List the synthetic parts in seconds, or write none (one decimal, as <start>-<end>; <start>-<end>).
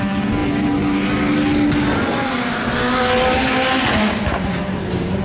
none